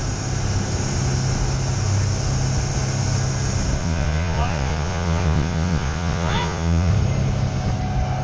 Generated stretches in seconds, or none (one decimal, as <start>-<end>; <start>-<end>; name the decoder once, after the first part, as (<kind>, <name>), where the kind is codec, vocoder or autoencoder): 3.8-6.9 (vocoder, Vocos)